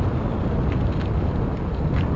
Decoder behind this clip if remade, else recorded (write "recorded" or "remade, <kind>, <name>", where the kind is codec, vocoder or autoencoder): recorded